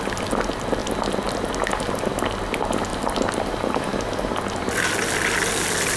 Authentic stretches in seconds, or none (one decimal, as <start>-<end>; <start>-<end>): 0.0-6.0